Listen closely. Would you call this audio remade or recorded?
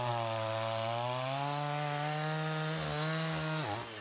recorded